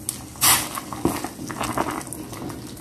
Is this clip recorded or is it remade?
recorded